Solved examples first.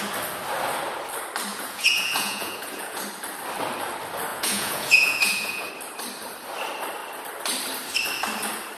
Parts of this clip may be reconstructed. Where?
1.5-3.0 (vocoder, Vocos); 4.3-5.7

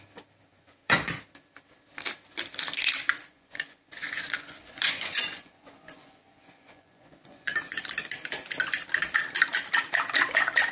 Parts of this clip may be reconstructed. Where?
0.5-1.1 (vocoder, Vocos); 3.3-7.8

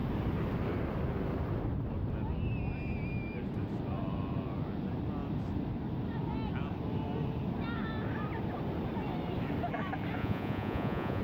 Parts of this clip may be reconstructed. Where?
10.2-11.2 (vocoder, Vocos)

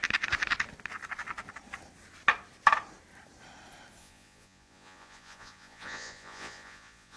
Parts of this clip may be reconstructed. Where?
4.0-7.2 (vocoder, Vocos)

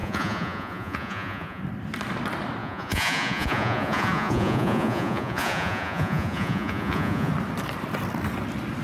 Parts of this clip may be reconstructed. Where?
0.0-1.6 (vocoder, Vocos); 2.6-7.3

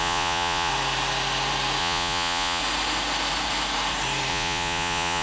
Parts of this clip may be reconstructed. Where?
0.0-0.7 (vocoder, Vocos); 1.8-2.6; 4.3-5.2